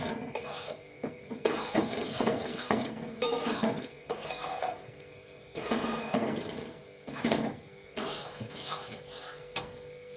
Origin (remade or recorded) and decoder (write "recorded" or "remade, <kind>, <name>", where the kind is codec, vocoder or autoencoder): remade, codec, SNAC